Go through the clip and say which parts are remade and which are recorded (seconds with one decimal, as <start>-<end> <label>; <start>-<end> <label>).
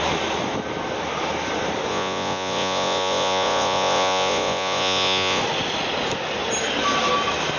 0.0-1.9 recorded; 1.9-5.4 remade; 5.4-7.6 recorded